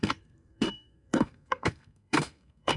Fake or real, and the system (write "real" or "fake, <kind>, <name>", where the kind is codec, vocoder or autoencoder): fake, codec, SNAC